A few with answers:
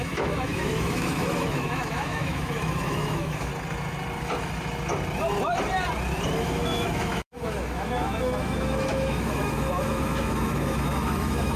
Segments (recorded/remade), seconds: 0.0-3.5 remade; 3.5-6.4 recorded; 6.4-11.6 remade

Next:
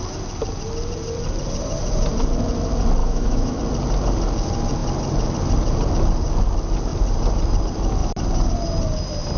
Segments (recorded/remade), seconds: 0.0-3.0 recorded; 3.0-3.6 remade; 3.6-9.4 recorded

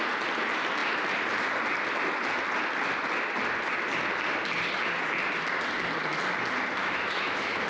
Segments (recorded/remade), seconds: 0.0-6.8 recorded; 6.8-7.7 remade